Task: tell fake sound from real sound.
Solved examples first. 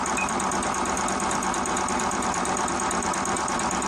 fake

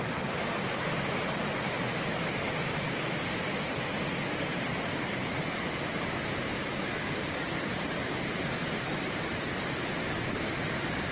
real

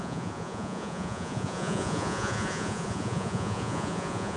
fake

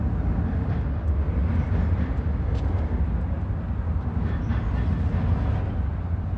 real